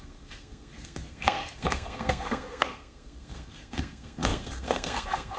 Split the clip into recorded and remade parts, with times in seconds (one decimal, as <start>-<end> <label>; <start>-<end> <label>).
0.0-5.4 remade